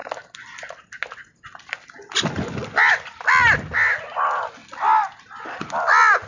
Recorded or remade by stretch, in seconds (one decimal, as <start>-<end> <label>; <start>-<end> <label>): 0.0-6.3 recorded